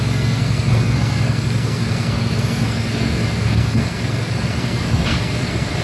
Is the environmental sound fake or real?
fake